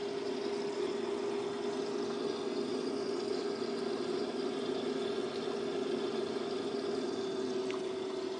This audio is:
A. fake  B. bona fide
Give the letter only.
B